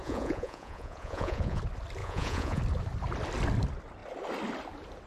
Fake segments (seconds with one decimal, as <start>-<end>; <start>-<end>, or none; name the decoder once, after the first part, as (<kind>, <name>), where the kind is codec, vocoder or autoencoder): 0.0-1.6 (vocoder, Vocos); 2.0-2.6